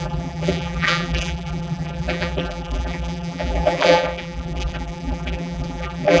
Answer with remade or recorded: remade